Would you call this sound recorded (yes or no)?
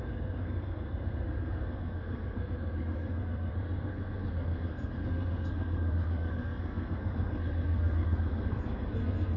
no